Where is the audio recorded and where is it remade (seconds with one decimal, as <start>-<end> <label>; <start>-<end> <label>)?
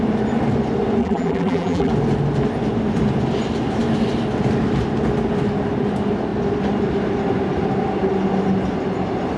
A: 0.0-1.0 recorded; 1.0-1.9 remade; 1.9-9.4 recorded